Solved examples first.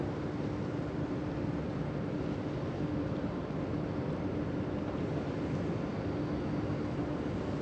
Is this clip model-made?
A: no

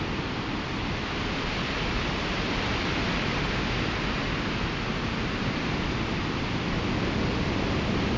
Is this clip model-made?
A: no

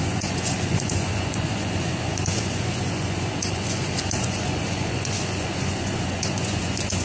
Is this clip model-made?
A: yes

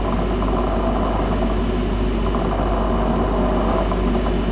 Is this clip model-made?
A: no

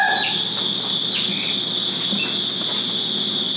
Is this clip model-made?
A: no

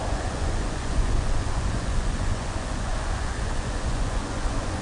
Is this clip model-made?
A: yes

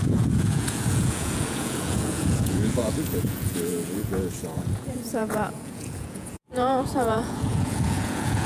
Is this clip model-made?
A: yes